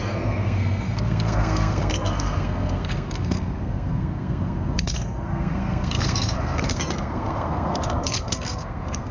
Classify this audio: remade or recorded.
remade